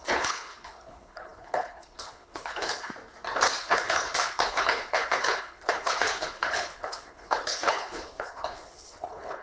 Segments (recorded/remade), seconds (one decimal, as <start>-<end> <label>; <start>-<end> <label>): 0.0-2.9 remade; 2.9-3.6 recorded; 3.6-9.4 remade